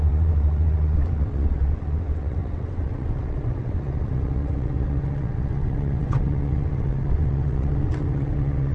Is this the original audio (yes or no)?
no